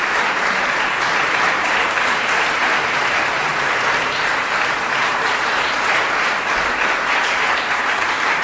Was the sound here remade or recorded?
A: remade